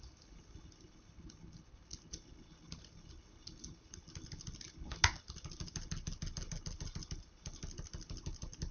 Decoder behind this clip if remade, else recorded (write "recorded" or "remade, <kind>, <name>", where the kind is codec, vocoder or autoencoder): recorded